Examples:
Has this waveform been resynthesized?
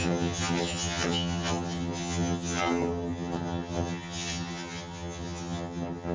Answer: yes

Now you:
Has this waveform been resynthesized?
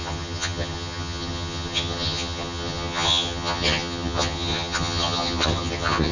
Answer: yes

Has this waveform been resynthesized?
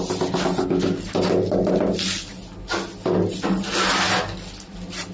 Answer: no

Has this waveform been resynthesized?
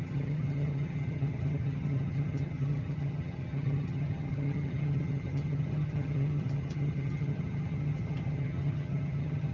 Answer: yes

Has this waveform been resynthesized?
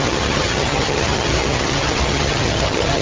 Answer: yes